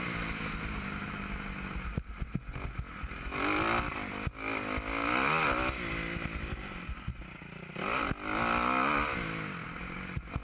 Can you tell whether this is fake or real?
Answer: real